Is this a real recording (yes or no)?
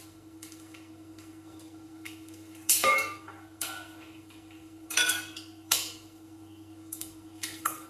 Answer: no